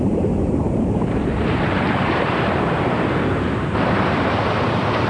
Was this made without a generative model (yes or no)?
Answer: no